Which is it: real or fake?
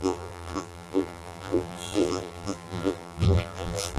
fake